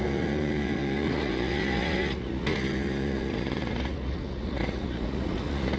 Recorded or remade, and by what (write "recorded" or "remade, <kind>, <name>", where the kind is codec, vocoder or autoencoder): remade, vocoder, Vocos